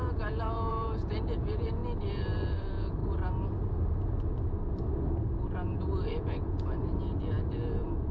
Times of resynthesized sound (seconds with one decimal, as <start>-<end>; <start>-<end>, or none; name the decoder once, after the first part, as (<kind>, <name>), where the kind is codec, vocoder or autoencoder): 0.0-1.8 (vocoder, Vocos); 2.6-3.0; 6.2-8.1